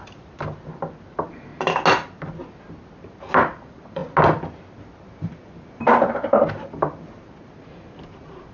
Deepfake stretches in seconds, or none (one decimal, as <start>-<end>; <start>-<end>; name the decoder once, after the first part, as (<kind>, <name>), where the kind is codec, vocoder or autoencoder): 0.0-1.5 (vocoder, BigVGAN v2); 3.0-4.0; 5.1-8.5